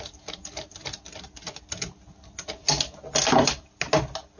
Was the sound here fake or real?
real